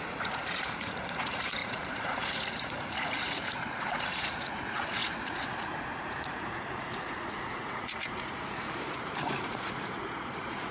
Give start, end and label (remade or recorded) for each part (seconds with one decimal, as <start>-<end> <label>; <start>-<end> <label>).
0.0-10.7 remade